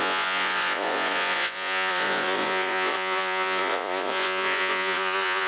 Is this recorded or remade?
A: remade